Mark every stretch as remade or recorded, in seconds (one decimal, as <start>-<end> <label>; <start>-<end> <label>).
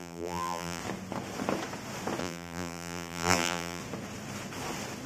0.0-0.8 remade; 0.8-2.2 recorded; 2.2-3.8 remade; 3.8-5.1 recorded